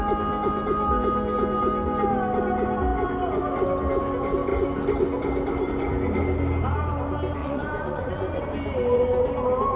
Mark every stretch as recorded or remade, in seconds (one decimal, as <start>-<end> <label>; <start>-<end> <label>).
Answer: 0.0-7.4 recorded; 7.4-8.4 remade; 8.4-9.8 recorded